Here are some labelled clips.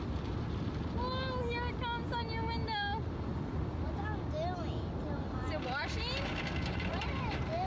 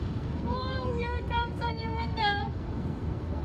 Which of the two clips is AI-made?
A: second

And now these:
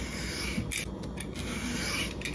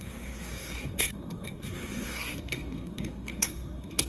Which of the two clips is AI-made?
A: second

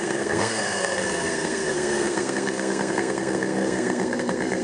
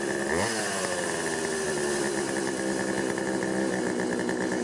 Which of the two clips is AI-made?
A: first